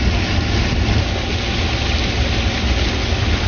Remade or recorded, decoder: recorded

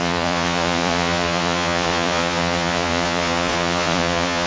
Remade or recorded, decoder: remade, vocoder, Vocos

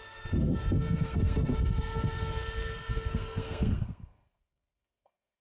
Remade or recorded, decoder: remade, codec, SNAC